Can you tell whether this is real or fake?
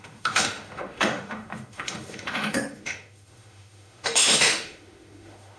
fake